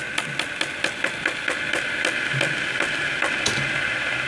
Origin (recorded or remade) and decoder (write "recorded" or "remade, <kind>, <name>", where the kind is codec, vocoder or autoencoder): recorded